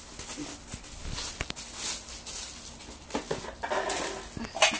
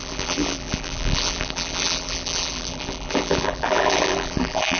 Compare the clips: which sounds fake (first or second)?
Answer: second